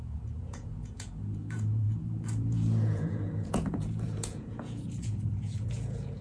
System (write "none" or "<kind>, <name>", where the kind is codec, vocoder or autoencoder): vocoder, Vocos